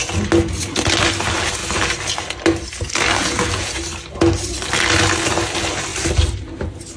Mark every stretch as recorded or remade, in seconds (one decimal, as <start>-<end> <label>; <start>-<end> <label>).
0.0-3.2 recorded; 3.2-3.8 remade; 3.8-7.0 recorded